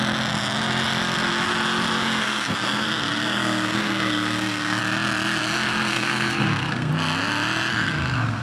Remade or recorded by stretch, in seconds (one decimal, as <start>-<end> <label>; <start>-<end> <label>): 0.0-2.2 recorded; 2.2-4.8 remade; 4.8-5.9 recorded; 5.9-6.9 remade; 6.9-7.7 recorded; 7.7-8.4 remade